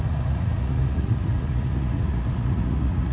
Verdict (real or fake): fake